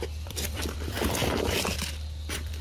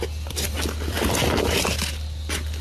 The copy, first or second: first